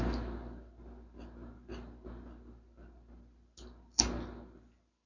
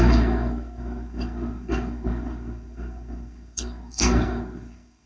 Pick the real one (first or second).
first